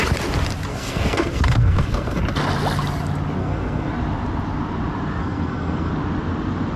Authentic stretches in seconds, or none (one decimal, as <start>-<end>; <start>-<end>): 0.0-0.7; 2.2-3.4; 3.9-5.2; 5.9-6.8